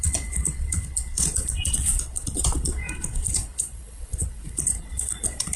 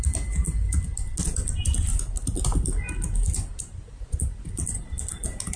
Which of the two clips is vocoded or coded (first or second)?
first